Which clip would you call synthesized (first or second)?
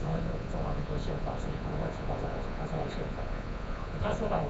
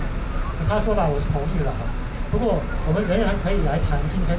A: first